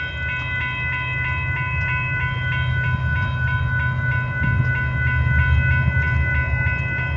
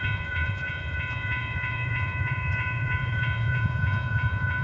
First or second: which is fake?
second